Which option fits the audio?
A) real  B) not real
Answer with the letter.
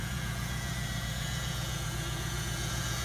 B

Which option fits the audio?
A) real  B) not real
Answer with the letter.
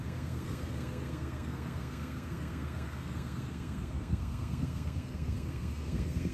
B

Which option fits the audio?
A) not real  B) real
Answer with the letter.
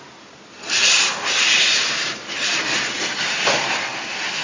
A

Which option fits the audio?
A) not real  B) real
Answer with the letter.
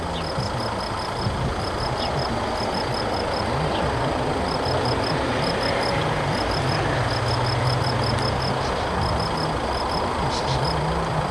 B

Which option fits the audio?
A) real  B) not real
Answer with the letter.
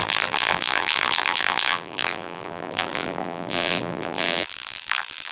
B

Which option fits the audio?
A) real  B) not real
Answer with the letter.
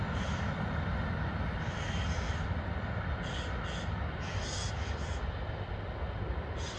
A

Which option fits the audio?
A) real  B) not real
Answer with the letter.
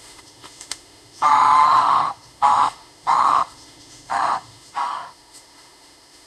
B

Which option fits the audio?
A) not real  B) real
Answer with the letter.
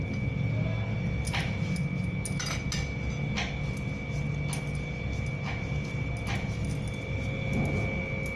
B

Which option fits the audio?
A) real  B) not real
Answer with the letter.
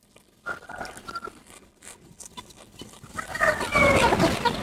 A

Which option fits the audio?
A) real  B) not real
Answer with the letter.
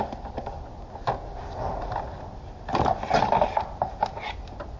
A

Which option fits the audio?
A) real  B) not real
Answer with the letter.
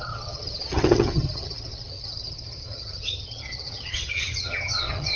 B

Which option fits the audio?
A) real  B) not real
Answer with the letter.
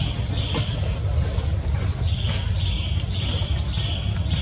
A